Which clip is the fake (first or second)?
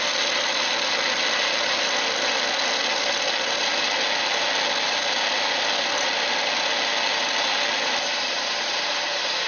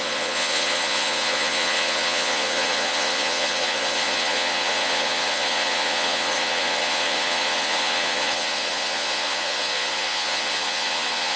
second